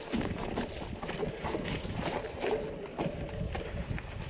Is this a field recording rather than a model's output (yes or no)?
yes